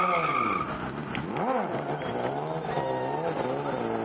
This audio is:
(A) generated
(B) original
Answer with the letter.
B